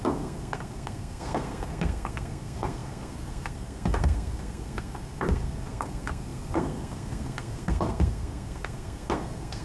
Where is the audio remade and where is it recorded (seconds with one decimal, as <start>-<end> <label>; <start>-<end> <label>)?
0.0-9.6 remade